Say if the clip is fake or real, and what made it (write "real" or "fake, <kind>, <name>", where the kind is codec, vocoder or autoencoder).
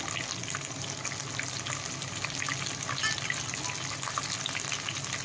real